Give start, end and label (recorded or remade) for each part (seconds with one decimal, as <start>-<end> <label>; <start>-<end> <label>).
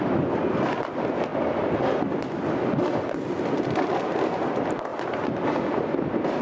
0.0-6.4 recorded